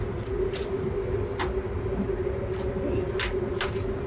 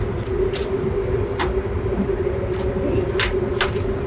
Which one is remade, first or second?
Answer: second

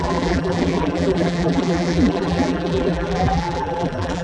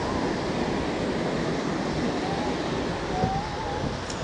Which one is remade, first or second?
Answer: first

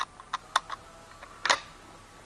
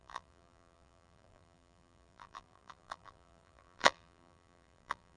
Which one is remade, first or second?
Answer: second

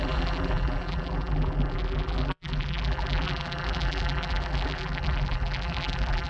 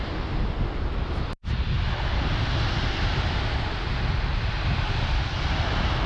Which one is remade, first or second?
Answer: first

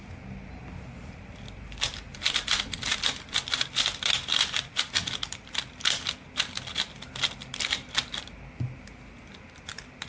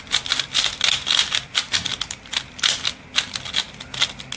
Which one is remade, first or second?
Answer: first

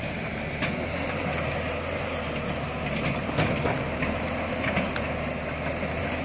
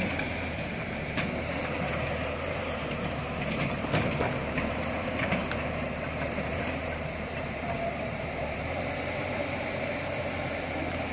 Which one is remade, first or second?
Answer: second